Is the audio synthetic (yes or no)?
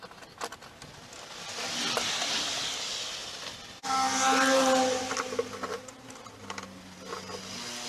no